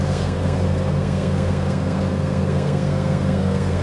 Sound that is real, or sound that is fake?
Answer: fake